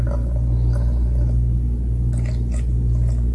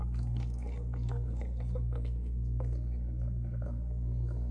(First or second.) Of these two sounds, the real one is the first